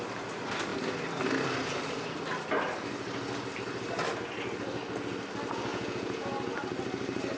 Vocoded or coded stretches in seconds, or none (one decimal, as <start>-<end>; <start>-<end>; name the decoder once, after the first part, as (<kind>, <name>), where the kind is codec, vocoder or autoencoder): 5.7-6.3 (vocoder, Vocos)

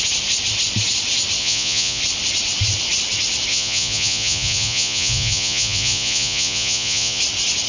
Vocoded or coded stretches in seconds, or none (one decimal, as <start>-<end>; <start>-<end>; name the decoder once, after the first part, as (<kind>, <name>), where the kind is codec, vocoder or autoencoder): 1.4-2.0 (vocoder, Vocos); 3.5-7.2

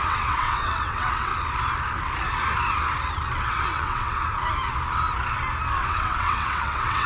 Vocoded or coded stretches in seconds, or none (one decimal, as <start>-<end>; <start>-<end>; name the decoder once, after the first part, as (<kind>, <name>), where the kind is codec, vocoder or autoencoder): 0.0-1.3 (vocoder, WaveNeXt); 3.4-4.2; 5.9-7.1

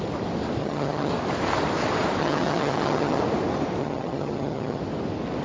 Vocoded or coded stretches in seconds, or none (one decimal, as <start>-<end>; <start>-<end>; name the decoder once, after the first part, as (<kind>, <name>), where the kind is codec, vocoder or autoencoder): 0.6-1.1 (vocoder, HiFi-GAN); 2.2-3.2; 3.8-4.8

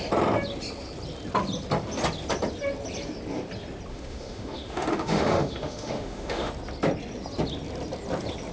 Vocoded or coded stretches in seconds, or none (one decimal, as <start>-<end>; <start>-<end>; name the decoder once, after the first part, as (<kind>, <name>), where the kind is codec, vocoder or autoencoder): 3.9-6.5 (autoencoder, DAC-VAE)

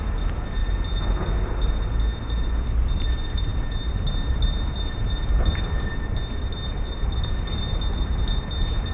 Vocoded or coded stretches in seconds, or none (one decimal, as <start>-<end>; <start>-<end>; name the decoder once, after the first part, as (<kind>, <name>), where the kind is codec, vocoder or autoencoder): 3.5-8.9 (vocoder, BigVGAN v2)